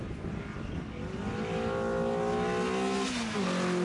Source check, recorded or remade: recorded